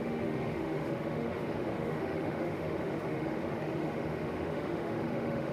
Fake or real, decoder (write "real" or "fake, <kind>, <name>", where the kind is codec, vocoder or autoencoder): fake, autoencoder, DAC-VAE